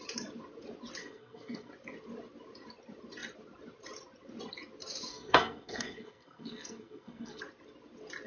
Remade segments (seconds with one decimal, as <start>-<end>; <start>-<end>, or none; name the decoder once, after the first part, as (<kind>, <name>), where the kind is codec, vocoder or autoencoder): 1.0-1.7 (codec, SNAC); 5.1-7.4